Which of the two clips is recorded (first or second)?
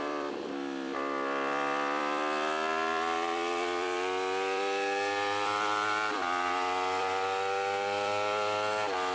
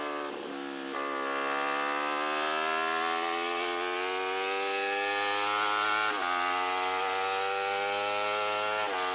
second